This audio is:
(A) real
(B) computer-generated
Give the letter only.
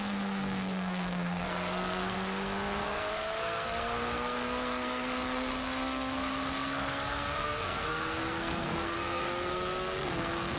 B